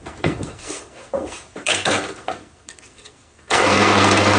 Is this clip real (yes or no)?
no